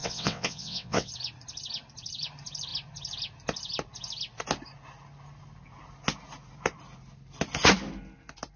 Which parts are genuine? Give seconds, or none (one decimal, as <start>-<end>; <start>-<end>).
1.1-8.6